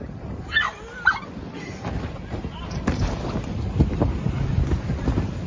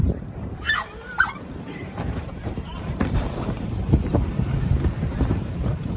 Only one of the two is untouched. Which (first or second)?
first